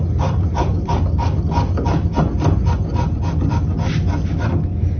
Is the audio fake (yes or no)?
no